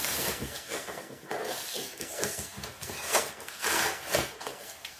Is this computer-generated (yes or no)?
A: yes